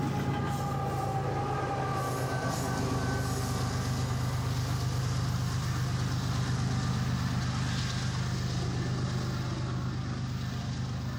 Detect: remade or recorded recorded